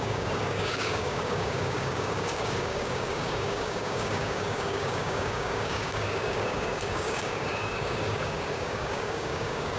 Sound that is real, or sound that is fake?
fake